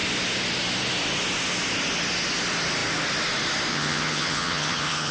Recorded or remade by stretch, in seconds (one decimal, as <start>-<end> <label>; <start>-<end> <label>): 0.0-3.7 recorded; 3.7-5.1 remade